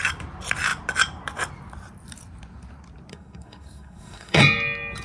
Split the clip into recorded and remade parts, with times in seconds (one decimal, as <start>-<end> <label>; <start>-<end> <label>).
0.0-3.1 recorded; 3.1-4.4 remade; 4.4-5.0 recorded